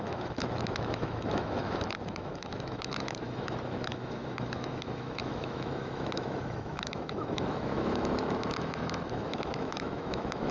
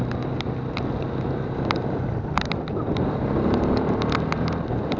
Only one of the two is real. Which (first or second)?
second